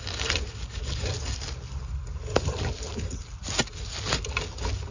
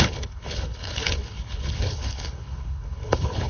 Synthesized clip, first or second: second